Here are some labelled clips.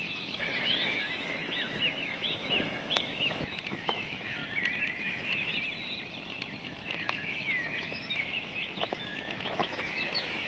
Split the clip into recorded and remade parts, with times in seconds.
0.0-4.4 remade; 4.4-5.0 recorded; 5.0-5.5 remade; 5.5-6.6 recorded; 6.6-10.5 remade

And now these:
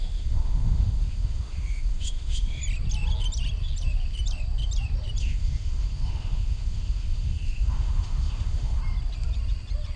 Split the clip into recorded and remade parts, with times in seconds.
0.0-2.6 remade; 2.6-5.2 recorded; 5.2-8.8 remade; 8.8-10.0 recorded

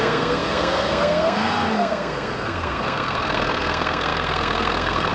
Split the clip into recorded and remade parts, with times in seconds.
0.0-5.1 remade

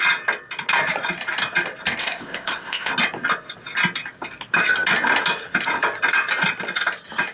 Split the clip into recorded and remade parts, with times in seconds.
0.0-2.0 recorded; 2.0-2.9 remade; 2.9-7.3 recorded

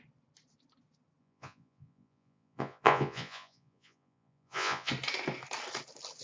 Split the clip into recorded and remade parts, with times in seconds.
0.0-1.2 recorded; 1.2-4.9 remade; 4.9-6.2 recorded

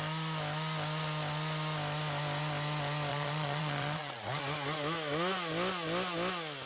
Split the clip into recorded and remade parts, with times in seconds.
0.0-3.1 recorded; 3.1-4.4 remade; 4.4-6.7 recorded

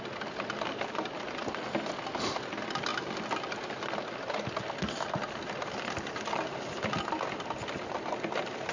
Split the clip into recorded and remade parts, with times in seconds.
0.0-8.7 recorded

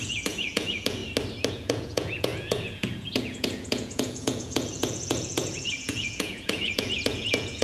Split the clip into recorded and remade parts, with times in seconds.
0.0-1.0 remade; 1.0-1.5 recorded; 1.5-7.6 remade